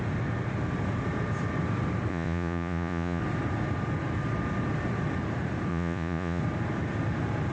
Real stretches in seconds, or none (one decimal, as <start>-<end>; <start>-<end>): 0.0-2.1; 3.2-5.7; 6.4-7.5